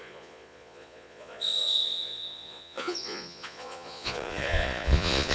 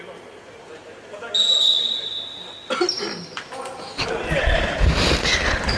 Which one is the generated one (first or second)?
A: first